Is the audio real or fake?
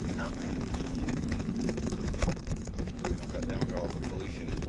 fake